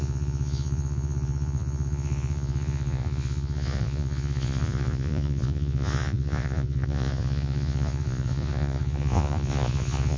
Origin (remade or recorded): remade